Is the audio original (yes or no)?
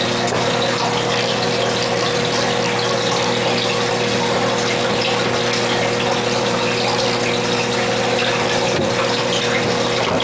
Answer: yes